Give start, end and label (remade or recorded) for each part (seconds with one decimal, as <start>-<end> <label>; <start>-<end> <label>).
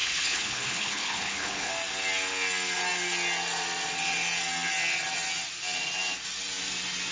0.0-1.7 remade; 1.7-7.1 recorded